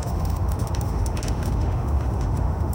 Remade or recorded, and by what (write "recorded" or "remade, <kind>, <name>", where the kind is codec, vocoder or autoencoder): remade, autoencoder, DAC-VAE